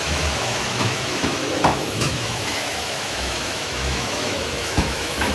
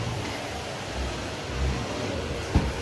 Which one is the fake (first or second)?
first